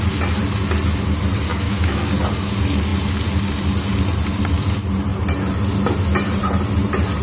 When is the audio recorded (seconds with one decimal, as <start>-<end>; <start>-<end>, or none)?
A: 0.0-1.5; 2.1-7.2